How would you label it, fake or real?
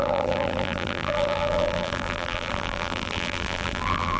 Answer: fake